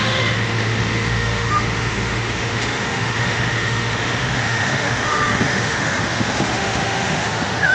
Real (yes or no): no